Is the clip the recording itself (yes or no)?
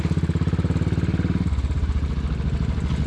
yes